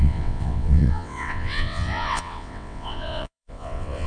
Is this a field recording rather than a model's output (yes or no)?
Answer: no